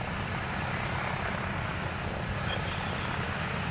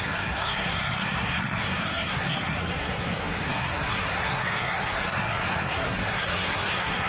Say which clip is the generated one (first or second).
second